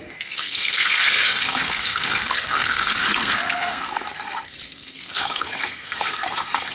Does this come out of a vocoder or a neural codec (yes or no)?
yes